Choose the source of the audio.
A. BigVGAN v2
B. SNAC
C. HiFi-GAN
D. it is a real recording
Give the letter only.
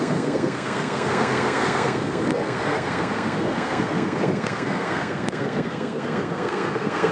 B